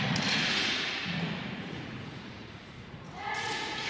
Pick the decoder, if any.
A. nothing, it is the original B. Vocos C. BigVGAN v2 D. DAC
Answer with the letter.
B